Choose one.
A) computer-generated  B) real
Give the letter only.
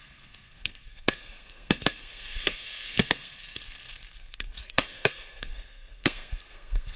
A